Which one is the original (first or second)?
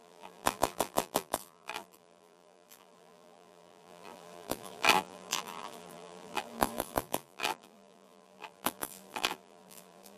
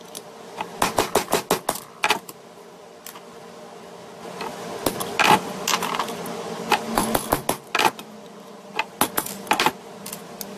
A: second